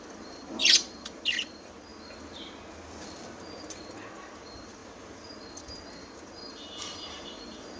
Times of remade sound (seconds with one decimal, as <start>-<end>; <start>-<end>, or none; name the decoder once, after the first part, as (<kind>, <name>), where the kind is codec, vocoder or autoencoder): 0.0-1.9 (vocoder, BigVGAN v2); 4.1-4.8; 5.6-7.8